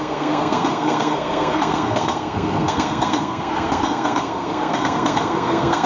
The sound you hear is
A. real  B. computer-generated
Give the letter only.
B